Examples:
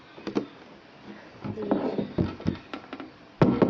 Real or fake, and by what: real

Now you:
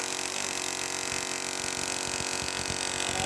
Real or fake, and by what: real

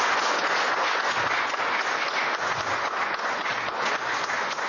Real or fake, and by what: fake, vocoder, Vocos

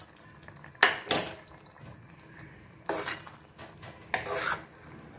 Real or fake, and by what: real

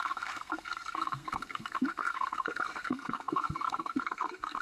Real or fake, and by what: fake, codec, SNAC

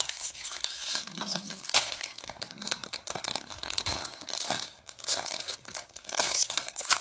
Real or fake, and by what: fake, codec, SNAC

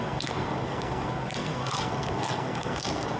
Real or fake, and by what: fake, codec, SNAC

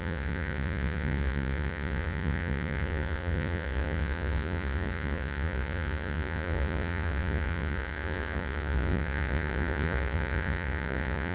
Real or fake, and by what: fake, vocoder, Vocos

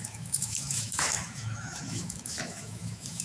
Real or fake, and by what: fake, autoencoder, DAC-VAE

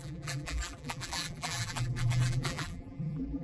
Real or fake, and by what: fake, vocoder, BigVGAN v2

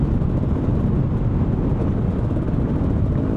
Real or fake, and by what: real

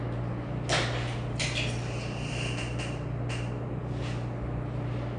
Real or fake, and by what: real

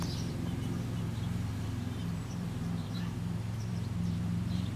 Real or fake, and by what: fake, vocoder, BigVGAN v2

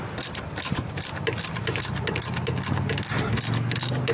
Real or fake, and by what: real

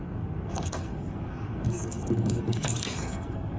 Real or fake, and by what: fake, codec, SNAC